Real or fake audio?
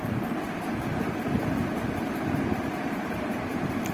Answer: real